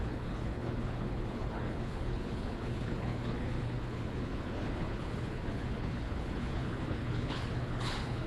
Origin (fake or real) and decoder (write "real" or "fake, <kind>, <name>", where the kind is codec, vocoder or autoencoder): fake, codec, HILCodec